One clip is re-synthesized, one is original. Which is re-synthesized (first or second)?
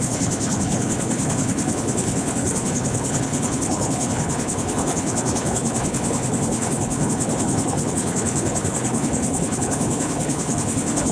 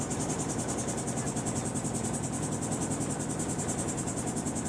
first